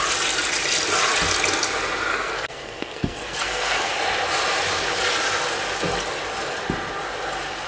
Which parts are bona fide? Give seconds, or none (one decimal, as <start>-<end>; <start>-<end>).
0.0-2.1; 3.9-7.7